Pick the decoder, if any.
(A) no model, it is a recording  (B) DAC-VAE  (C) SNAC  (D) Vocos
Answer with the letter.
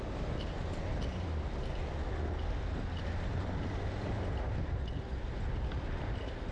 A